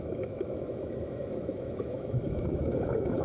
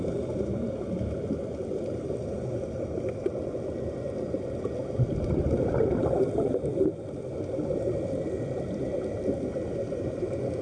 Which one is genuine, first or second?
second